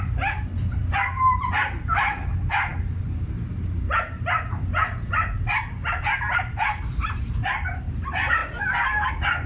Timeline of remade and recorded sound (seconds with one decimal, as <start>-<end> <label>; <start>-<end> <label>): 0.0-9.5 recorded